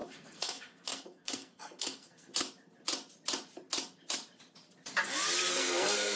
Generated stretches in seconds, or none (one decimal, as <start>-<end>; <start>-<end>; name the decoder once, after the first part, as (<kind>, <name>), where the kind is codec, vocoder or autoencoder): 0.0-2.3 (codec, SNAC); 5.5-6.2